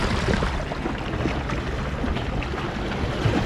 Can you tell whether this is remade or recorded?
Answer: recorded